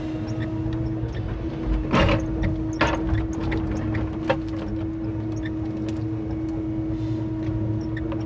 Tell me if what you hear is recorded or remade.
recorded